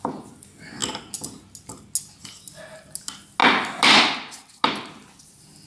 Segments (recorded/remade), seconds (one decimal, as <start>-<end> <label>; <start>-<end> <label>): 0.0-5.7 recorded